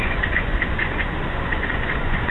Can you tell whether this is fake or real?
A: fake